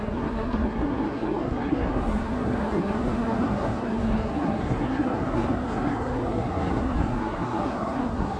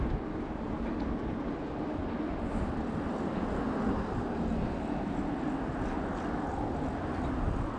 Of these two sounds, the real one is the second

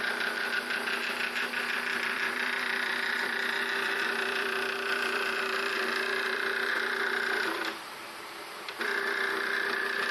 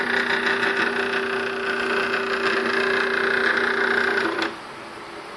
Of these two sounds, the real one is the second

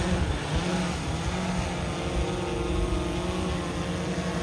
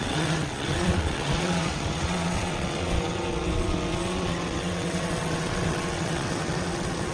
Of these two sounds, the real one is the first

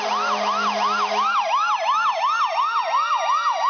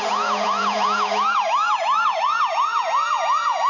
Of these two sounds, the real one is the first